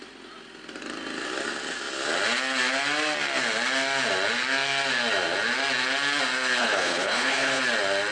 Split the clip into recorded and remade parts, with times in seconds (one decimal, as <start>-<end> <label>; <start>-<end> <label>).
0.0-6.6 recorded; 6.6-7.6 remade; 7.6-8.1 recorded